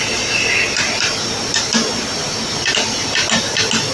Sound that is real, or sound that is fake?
real